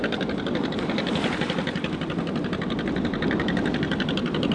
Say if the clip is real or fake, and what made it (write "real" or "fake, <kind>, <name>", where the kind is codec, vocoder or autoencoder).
real